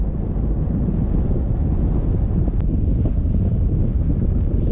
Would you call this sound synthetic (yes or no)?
no